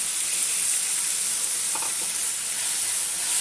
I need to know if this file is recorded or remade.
recorded